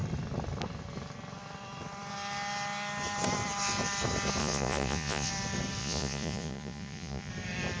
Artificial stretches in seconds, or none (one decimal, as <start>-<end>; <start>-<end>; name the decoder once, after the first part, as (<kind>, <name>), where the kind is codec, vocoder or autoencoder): 4.4-5.3 (vocoder, Vocos); 5.8-7.3